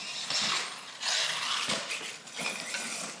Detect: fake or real real